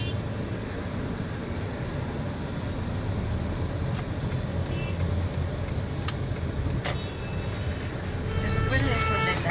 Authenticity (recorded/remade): recorded